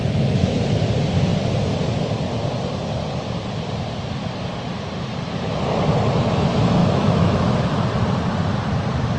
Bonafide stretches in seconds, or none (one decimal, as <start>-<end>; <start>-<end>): 0.6-6.8; 7.5-9.2